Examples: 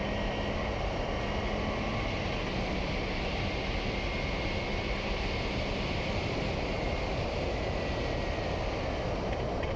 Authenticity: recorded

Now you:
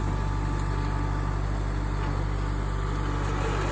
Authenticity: recorded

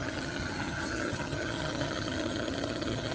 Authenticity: remade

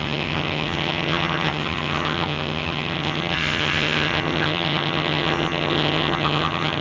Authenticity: remade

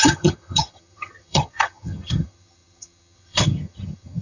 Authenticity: remade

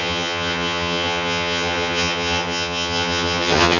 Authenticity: remade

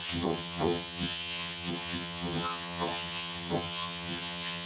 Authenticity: remade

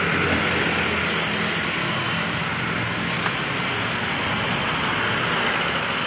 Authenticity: recorded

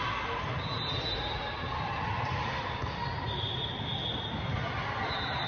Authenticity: recorded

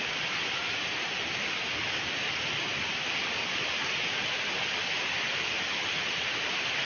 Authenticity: recorded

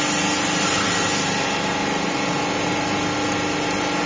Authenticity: recorded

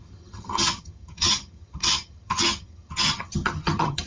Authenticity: remade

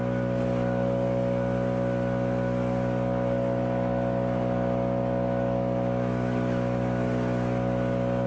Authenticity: recorded